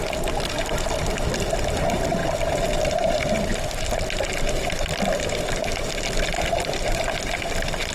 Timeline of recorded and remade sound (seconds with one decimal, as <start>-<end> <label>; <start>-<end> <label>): 0.0-7.9 recorded